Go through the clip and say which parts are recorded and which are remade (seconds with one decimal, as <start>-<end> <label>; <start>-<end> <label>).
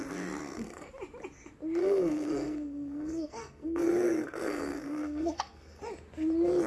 0.0-0.4 recorded; 0.4-0.9 remade; 0.9-1.8 recorded; 1.8-5.8 remade; 5.8-6.7 recorded